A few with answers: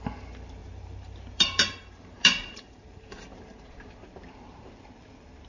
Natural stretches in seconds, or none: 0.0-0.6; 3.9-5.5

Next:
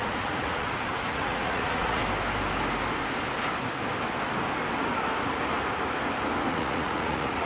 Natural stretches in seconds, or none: 2.0-6.5

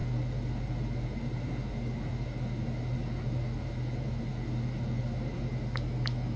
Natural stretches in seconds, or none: 0.0-6.4

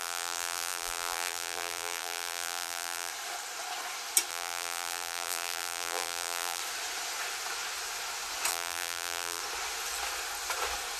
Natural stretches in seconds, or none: 3.1-4.3; 6.6-8.5; 9.4-11.0

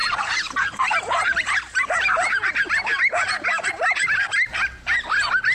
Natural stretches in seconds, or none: 2.5-2.9; 3.7-5.5

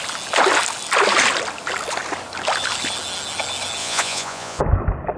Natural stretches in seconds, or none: 0.0-3.8; 4.6-5.2

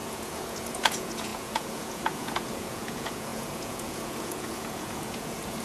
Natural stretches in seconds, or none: none